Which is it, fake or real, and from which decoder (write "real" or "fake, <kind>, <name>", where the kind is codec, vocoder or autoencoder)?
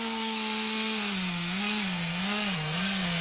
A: fake, codec, SNAC